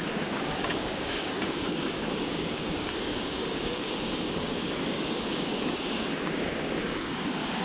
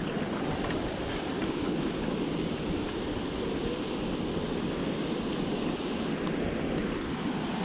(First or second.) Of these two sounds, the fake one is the first